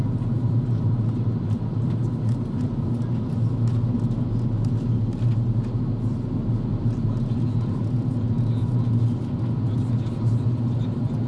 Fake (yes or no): no